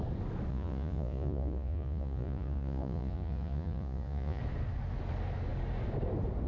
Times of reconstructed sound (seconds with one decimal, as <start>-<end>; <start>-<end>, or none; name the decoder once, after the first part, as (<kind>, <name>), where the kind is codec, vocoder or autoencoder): 0.5-4.4 (vocoder, Vocos)